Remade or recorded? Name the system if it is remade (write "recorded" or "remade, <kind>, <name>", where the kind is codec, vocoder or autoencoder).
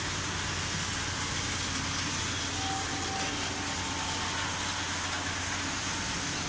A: recorded